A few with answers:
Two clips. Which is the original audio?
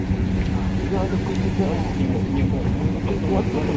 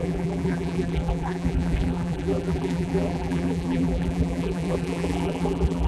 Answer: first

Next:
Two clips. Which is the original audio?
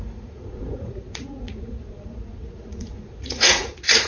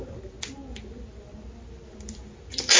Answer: second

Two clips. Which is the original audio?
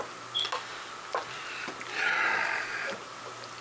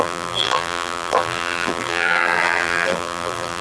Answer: first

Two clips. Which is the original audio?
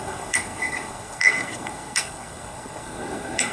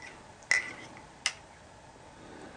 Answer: second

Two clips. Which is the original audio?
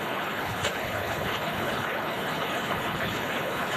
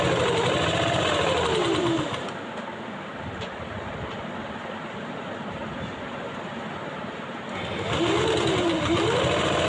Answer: second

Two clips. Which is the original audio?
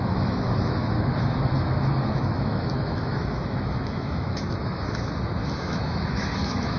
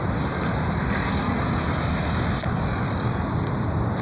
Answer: second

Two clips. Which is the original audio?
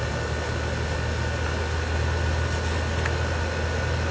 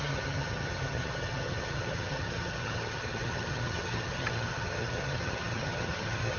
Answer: first